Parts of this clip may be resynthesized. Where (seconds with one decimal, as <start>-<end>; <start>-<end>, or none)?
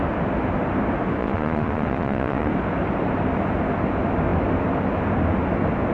1.2-2.5